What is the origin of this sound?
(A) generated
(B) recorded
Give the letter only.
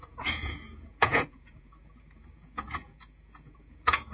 A